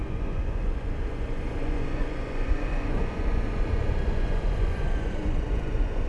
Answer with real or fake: fake